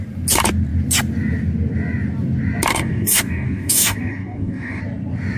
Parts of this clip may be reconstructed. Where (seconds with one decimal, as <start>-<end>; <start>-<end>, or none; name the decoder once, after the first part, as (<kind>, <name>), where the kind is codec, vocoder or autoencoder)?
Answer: 2.7-4.8 (codec, DAC)

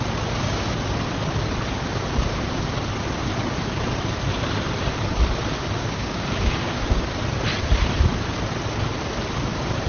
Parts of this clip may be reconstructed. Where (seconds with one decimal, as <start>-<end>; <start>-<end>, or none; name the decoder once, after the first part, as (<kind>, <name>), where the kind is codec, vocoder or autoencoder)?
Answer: 5.8-7.0 (codec, DAC)

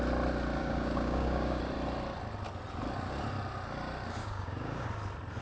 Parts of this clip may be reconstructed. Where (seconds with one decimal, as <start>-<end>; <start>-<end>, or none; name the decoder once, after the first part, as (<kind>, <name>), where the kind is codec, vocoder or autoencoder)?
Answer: 0.6-1.6 (codec, DAC); 4.2-4.9

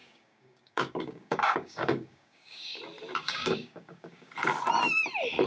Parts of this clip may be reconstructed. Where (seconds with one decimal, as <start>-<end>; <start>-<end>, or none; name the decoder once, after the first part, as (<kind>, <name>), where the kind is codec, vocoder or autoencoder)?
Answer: 0.0-2.8 (codec, DAC); 3.2-4.3

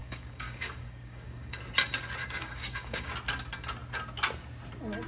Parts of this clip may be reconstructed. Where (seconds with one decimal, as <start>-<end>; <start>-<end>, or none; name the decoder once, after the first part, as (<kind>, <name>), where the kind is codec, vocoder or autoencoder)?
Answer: 0.0-1.6 (codec, DAC); 2.2-3.1

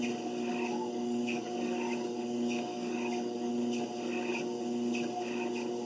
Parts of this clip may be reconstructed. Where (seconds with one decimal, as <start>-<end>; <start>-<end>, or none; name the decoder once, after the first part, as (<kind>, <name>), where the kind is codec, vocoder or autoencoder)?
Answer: 0.5-3.5 (codec, DAC)